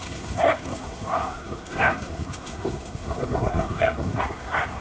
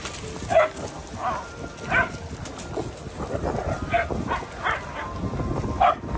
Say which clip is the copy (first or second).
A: first